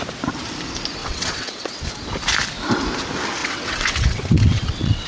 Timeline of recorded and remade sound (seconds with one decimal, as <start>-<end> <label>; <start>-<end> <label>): 0.0-1.0 recorded; 1.0-1.9 remade; 1.9-3.4 recorded; 3.4-5.1 remade